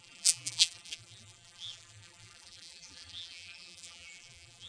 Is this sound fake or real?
fake